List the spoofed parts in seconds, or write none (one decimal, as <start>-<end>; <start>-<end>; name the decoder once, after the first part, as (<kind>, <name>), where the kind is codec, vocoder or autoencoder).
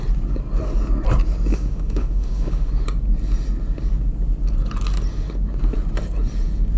1.5-2.7 (autoencoder, DAC-VAE)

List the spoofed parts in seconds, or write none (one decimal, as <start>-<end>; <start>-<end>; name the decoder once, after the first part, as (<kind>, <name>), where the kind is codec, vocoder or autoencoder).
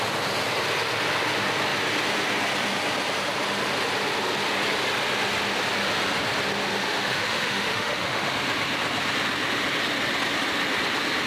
6.8-8.3 (autoencoder, DAC-VAE)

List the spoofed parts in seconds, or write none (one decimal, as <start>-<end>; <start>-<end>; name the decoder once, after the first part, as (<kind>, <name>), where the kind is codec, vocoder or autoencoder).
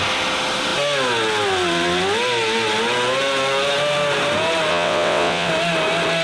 4.7-5.5 (vocoder, WaveNeXt)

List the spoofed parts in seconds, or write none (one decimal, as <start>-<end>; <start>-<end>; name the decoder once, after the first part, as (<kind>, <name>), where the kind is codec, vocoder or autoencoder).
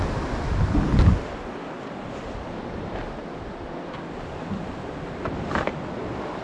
none